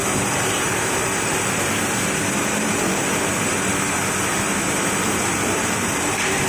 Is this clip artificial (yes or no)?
yes